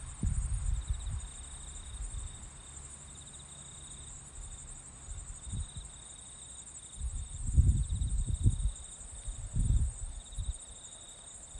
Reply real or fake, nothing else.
real